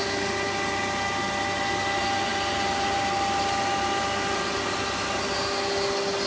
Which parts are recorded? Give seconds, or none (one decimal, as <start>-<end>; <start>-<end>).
0.0-6.3